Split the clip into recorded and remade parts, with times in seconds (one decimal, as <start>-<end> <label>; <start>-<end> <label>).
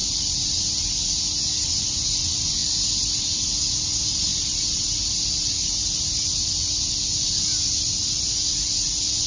0.0-0.5 remade; 0.5-9.3 recorded